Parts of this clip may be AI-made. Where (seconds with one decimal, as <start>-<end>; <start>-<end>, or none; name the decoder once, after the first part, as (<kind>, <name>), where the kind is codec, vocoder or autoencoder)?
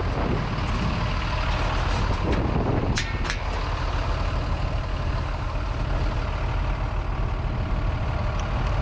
4.9-5.7 (codec, DAC)